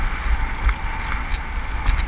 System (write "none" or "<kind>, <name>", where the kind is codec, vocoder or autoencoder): none